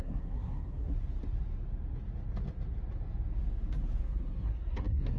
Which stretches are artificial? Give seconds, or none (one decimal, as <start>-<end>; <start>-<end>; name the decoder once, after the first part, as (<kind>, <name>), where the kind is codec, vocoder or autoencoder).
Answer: 0.0-0.9 (codec, SNAC); 4.0-5.2

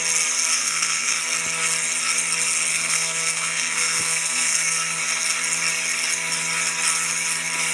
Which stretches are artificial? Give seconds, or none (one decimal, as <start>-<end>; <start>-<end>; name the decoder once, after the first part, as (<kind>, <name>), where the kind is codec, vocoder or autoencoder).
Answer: 0.6-1.2 (codec, SNAC); 2.7-5.0